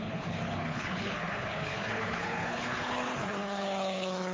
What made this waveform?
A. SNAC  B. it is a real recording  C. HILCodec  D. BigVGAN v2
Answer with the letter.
C